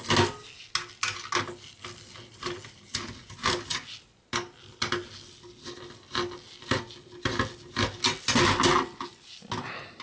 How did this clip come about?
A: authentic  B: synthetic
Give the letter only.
A